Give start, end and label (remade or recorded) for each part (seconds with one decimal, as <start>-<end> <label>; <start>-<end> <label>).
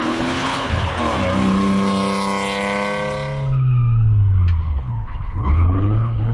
0.0-0.9 remade; 0.9-4.7 recorded; 4.7-6.3 remade